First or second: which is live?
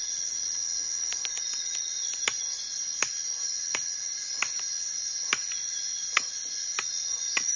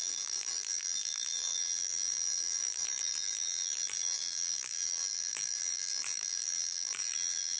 first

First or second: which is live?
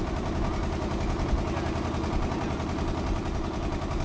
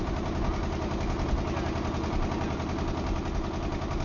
second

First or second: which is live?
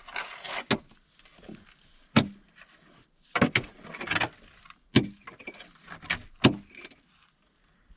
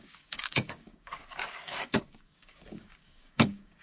first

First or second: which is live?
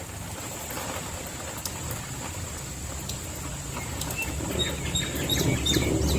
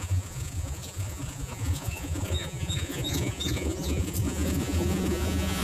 first